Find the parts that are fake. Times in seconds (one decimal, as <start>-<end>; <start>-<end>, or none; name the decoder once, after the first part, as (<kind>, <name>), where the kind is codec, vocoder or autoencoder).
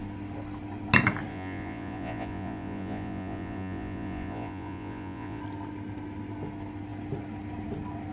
1.3-5.4 (vocoder, Vocos)